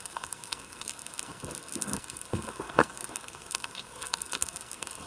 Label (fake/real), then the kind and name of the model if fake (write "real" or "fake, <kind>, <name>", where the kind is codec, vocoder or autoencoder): fake, codec, SNAC